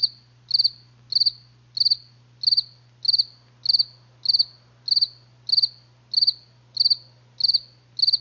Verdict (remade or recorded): recorded